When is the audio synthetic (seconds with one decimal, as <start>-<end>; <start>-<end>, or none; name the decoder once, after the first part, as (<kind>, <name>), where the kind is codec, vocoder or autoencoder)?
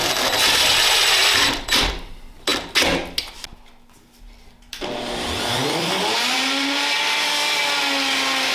0.0-1.9 (vocoder, BigVGAN v2); 4.7-7.6